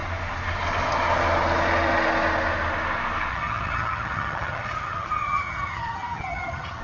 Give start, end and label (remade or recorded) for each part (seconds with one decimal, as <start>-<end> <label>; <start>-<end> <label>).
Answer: 0.0-3.3 recorded; 3.3-6.8 remade